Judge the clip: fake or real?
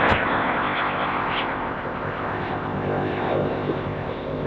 fake